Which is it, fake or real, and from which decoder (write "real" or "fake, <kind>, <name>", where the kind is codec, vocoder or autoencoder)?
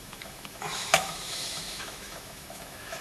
fake, autoencoder, DAC-VAE